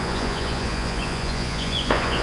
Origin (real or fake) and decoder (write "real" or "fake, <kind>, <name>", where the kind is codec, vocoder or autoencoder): fake, vocoder, Vocos